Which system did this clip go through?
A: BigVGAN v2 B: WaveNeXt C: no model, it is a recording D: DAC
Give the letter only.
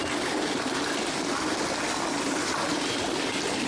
C